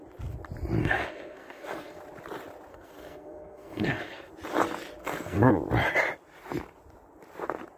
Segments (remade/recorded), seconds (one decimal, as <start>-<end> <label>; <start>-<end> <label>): 0.0-0.8 recorded; 0.8-2.0 remade; 2.0-2.7 recorded; 2.7-4.3 remade; 4.3-5.0 recorded; 5.0-5.5 remade; 5.5-7.8 recorded